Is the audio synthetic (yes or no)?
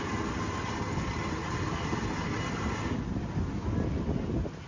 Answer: no